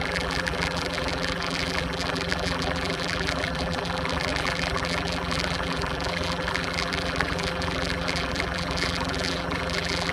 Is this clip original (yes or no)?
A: no